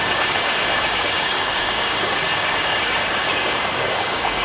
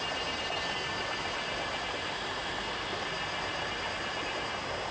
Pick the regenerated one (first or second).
first